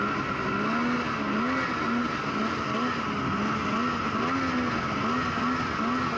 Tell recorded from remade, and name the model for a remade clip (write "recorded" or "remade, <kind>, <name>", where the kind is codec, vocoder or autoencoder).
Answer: recorded